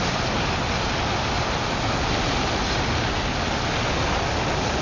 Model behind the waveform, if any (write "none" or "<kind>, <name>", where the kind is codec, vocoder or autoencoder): none